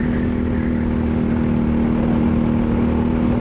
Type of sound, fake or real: real